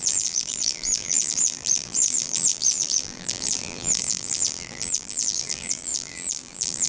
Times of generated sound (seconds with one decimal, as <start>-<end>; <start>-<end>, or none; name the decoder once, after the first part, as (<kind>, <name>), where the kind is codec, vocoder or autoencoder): 0.0-6.9 (vocoder, BigVGAN v2)